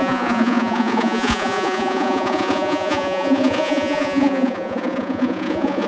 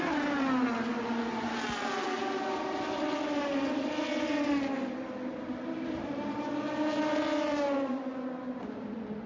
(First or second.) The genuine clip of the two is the second